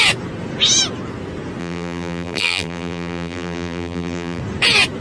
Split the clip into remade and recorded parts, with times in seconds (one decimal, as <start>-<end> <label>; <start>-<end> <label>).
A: 0.0-1.6 recorded; 1.6-4.4 remade; 4.4-5.0 recorded

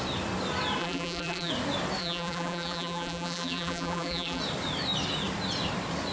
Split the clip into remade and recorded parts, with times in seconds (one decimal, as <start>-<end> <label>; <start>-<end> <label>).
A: 0.0-0.8 recorded; 0.8-1.5 remade; 1.5-2.0 recorded; 2.0-4.4 remade; 4.4-6.1 recorded

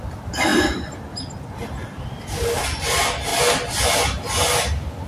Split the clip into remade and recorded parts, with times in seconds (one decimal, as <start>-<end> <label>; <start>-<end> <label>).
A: 0.0-5.1 recorded

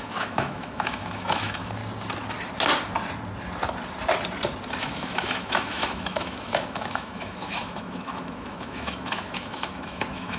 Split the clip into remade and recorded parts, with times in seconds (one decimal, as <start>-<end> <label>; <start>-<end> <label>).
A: 0.0-1.8 remade; 1.8-4.8 recorded; 4.8-10.4 remade